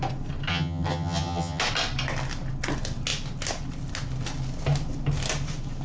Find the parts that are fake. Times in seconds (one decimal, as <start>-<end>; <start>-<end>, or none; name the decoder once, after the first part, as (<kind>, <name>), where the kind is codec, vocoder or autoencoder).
0.5-1.6 (vocoder, HiFi-GAN)